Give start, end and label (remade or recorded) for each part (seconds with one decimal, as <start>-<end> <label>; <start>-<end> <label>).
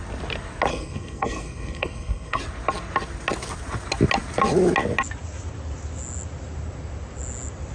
0.0-0.7 recorded; 0.7-2.4 remade; 2.4-7.7 recorded